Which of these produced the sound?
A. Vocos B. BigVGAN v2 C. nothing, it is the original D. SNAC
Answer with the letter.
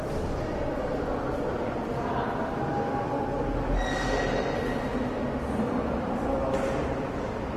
C